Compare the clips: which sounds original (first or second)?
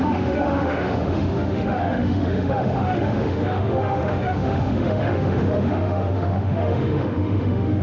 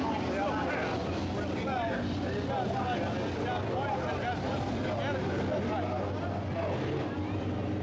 second